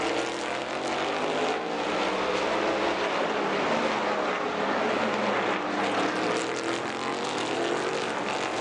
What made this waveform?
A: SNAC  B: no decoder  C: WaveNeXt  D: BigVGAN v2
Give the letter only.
B